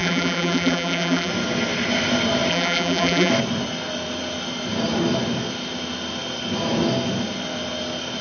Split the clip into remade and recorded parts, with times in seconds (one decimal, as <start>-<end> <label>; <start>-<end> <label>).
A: 0.0-1.3 remade; 1.3-2.5 recorded; 2.5-3.3 remade; 3.3-8.2 recorded